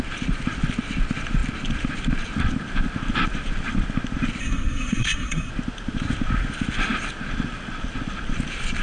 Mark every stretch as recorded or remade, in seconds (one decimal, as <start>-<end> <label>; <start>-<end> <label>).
0.0-4.4 recorded; 4.4-5.5 remade; 5.5-8.8 recorded